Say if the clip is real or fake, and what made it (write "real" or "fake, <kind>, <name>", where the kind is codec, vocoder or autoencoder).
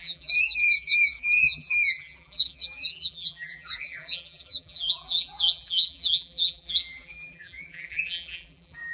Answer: fake, vocoder, BigVGAN v2